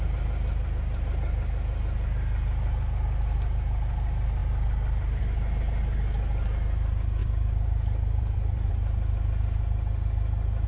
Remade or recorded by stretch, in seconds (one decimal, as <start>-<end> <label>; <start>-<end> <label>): 0.0-4.4 recorded; 4.4-5.2 remade; 5.2-7.2 recorded; 7.2-8.7 remade; 8.7-10.7 recorded